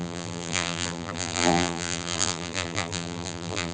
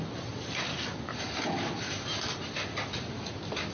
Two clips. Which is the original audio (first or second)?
second